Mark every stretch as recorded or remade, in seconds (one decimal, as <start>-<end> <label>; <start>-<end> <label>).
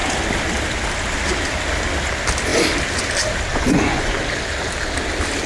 0.0-3.5 recorded; 3.5-4.2 remade; 4.2-5.5 recorded